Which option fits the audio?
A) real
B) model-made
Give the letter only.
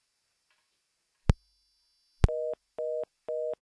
A